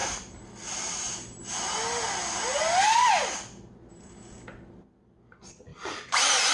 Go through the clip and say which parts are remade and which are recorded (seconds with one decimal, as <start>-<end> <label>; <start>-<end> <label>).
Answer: 0.0-5.7 recorded; 5.7-6.5 remade